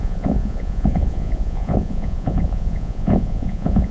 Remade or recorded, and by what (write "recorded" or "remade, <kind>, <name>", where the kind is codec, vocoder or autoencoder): remade, vocoder, Vocos